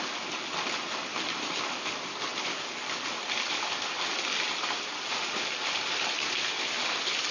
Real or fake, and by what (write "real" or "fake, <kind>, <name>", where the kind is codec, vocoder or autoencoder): real